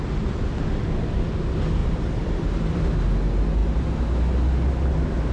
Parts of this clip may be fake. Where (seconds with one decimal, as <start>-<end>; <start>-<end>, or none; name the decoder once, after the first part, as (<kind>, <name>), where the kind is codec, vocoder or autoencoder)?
1.8-2.9 (vocoder, BigVGAN v2)